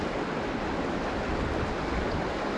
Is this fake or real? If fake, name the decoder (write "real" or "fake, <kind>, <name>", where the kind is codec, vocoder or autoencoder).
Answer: real